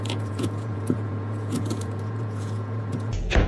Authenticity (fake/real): fake